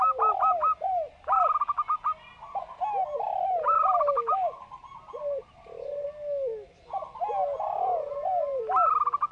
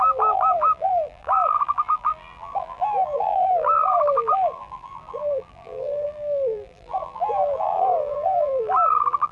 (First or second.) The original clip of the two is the first